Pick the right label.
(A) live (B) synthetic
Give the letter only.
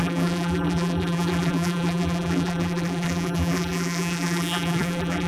B